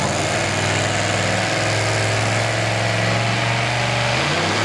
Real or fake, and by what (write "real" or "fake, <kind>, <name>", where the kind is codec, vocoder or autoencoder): real